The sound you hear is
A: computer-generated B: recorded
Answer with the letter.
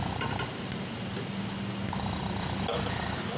B